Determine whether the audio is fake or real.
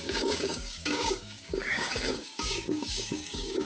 fake